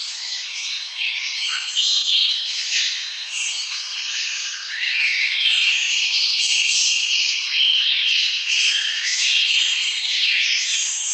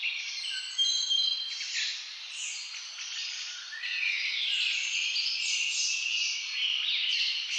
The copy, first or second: first